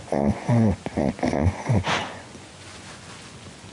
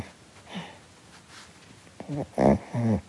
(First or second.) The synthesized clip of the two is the first